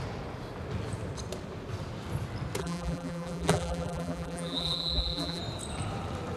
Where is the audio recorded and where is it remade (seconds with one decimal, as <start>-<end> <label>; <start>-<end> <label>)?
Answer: 0.0-2.6 recorded; 2.6-5.4 remade; 5.4-6.4 recorded